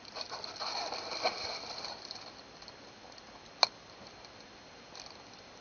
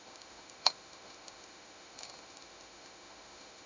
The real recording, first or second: first